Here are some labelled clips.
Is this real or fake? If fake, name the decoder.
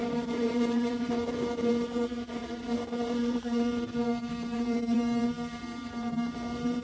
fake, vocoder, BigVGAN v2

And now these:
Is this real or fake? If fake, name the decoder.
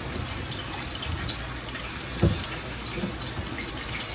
real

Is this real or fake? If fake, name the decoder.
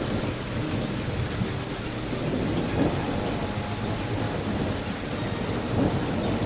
real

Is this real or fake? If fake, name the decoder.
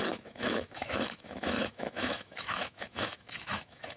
fake, autoencoder, DAC-VAE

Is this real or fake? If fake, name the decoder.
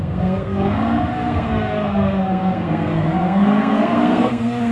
fake, codec, SNAC